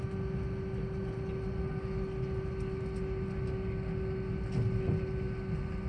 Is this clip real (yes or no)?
yes